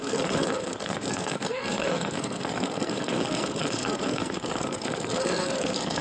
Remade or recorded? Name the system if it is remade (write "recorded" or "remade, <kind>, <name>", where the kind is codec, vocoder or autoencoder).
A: remade, codec, SNAC